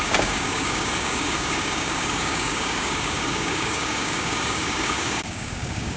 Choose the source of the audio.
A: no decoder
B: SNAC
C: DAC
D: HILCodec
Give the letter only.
C